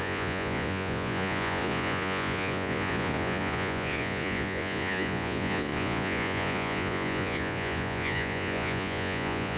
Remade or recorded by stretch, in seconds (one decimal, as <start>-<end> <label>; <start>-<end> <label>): 0.0-9.6 remade